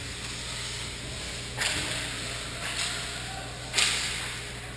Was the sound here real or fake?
real